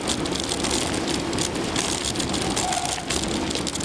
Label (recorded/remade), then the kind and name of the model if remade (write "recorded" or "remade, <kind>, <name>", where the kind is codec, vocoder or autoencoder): recorded